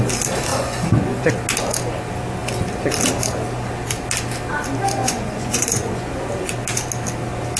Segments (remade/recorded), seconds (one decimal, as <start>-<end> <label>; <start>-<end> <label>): 0.0-0.5 recorded; 0.5-1.3 remade; 1.3-5.0 recorded; 5.0-6.1 remade; 6.1-7.6 recorded